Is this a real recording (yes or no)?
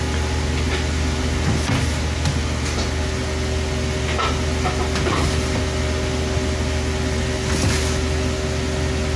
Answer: yes